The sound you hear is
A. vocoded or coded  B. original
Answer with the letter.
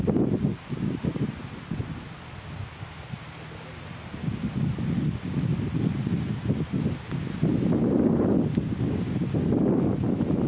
B